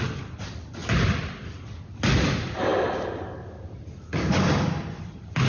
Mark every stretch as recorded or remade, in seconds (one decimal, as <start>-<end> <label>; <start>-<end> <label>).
0.0-0.8 recorded; 0.8-1.5 remade; 1.5-5.5 recorded